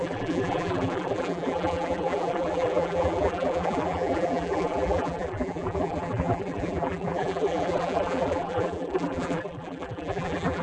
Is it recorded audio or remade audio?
remade